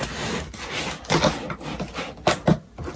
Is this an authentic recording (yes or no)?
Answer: yes